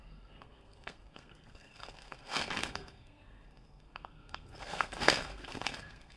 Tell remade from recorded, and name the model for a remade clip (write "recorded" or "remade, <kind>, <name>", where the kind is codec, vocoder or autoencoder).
remade, codec, SNAC